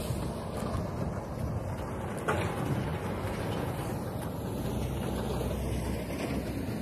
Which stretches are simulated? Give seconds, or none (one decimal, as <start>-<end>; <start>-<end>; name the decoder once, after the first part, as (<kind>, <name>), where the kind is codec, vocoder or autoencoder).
none